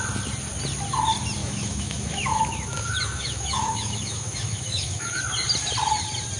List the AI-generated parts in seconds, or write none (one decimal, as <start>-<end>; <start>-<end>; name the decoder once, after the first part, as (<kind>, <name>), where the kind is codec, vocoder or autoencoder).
1.4-5.2 (autoencoder, DAC-VAE)